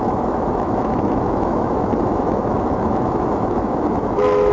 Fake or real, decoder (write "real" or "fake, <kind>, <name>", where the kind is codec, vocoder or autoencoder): fake, autoencoder, DAC-VAE